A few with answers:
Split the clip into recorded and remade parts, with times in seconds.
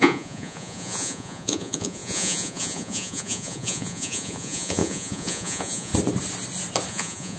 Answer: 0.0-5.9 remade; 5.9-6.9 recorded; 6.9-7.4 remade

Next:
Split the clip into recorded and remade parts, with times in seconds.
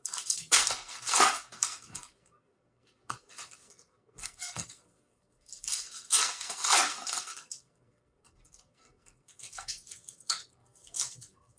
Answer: 0.0-11.6 remade